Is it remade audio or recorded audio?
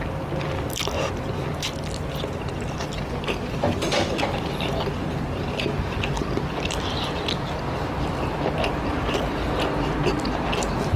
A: recorded